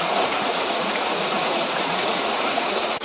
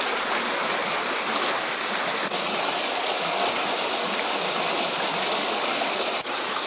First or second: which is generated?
first